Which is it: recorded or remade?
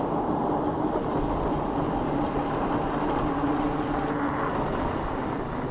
recorded